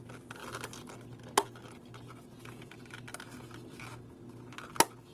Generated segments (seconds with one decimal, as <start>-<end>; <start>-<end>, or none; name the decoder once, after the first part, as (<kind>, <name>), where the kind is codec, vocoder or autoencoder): none